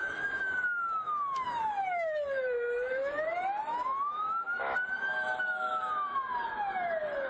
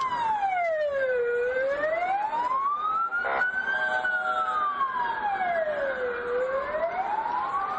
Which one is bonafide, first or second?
second